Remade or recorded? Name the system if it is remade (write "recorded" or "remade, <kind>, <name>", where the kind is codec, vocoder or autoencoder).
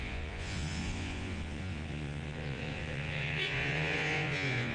remade, vocoder, Vocos